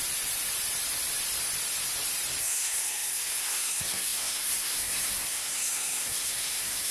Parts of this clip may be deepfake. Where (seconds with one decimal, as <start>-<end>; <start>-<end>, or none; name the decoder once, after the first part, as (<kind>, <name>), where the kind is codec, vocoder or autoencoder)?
2.4-6.9 (codec, SNAC)